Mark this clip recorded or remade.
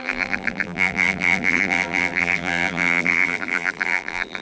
remade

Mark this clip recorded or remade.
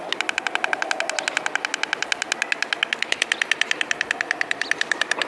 recorded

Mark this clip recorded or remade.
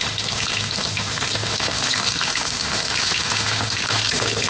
remade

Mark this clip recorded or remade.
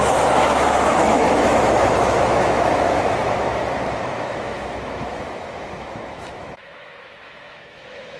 remade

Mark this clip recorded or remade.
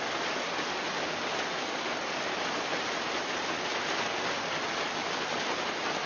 recorded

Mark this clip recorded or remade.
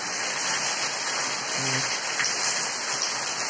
recorded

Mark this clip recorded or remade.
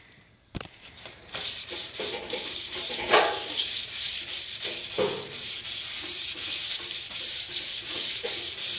remade